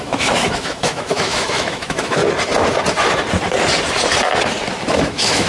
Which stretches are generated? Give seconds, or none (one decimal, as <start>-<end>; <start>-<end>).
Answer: 0.0-2.2; 4.9-5.5